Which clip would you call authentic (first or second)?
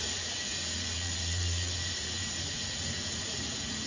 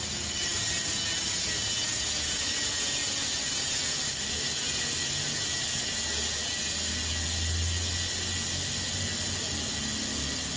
second